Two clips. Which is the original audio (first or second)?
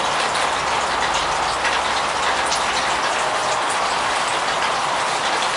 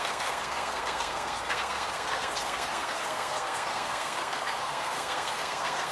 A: first